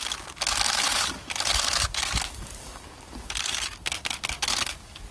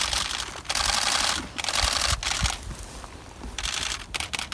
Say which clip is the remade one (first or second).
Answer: first